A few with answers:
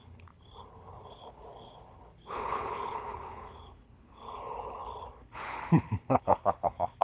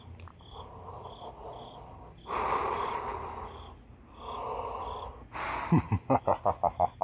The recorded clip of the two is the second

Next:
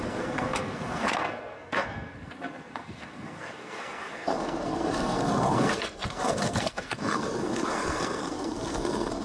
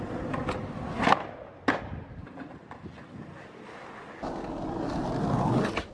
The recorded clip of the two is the second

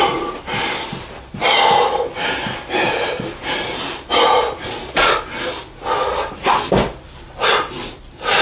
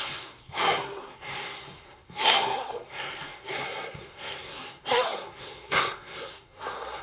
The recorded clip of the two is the first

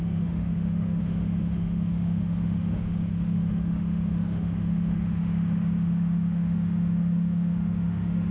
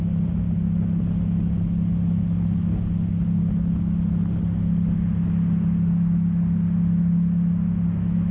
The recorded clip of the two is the second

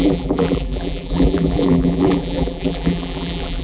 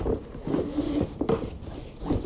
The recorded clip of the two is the second